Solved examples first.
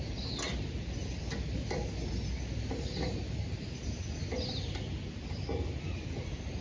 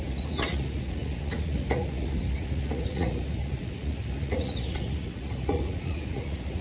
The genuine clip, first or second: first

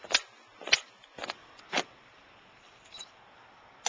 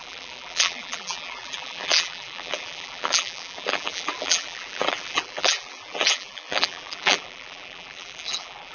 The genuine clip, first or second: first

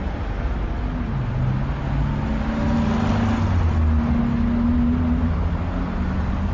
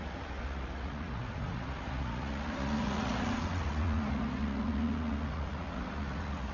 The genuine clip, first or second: first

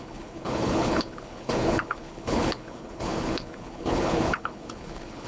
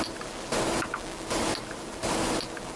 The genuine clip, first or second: second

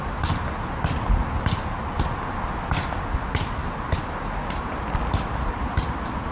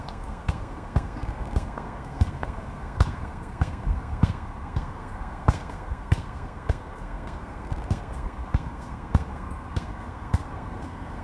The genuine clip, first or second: first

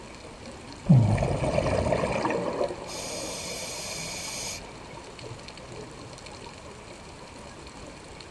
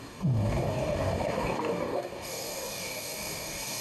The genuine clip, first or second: first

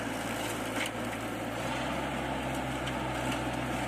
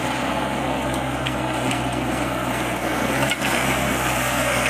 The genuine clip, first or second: first